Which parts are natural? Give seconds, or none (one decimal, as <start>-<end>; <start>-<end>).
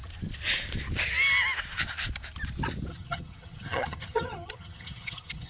0.0-2.9